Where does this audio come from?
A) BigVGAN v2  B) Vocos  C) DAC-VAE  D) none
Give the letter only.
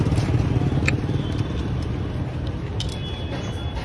D